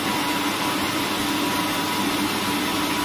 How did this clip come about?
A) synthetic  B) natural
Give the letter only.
B